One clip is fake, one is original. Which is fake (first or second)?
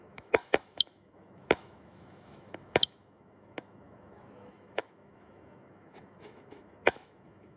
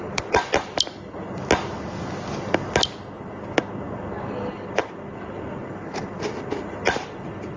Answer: first